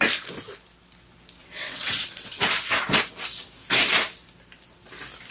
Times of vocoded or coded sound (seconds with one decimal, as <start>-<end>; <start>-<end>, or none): 1.4-2.4